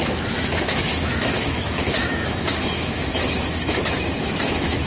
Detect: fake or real fake